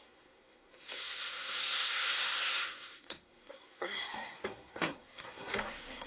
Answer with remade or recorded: remade